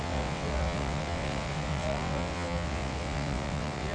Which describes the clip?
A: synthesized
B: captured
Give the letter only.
A